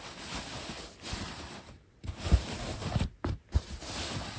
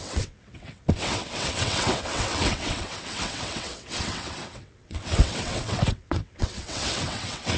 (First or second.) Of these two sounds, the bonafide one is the first